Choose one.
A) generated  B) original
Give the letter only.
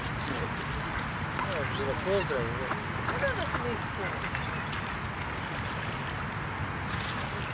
B